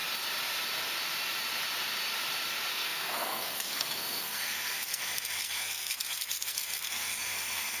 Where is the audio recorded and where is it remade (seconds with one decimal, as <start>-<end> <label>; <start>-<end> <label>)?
0.0-2.7 recorded; 2.7-7.8 remade